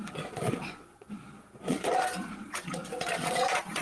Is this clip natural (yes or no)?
no